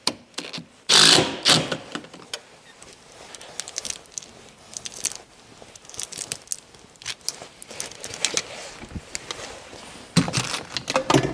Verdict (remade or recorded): recorded